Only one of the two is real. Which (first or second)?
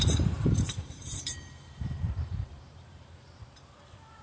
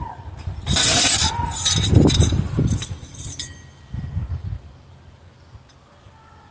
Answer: second